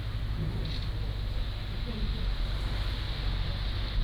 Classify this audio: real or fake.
real